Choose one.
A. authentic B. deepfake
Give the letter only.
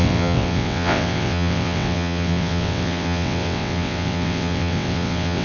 B